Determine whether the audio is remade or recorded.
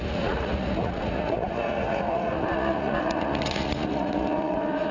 remade